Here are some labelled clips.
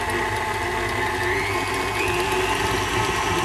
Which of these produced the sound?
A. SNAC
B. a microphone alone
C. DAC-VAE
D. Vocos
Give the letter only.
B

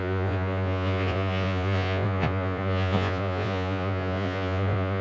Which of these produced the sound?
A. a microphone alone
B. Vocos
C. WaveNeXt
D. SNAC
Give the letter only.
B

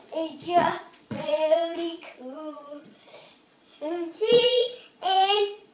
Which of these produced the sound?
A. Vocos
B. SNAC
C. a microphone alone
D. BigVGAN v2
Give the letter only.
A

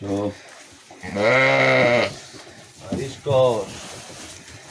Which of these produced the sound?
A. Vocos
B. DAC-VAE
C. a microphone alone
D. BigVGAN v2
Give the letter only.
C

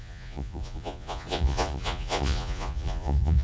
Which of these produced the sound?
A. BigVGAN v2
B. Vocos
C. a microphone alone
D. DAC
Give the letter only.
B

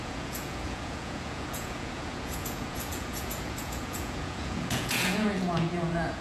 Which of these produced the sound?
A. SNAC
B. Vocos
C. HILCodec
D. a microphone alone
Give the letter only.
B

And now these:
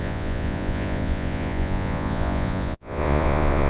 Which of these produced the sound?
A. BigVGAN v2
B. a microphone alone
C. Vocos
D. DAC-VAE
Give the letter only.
C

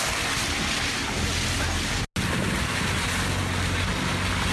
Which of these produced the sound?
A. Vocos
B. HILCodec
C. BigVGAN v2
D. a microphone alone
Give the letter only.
D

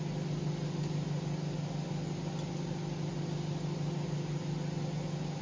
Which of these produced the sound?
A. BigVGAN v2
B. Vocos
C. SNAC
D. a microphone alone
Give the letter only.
D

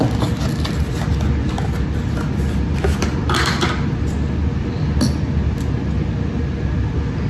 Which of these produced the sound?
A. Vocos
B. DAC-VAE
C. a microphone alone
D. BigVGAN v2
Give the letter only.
C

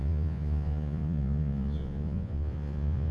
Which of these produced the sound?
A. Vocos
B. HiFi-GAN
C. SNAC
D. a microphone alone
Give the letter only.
A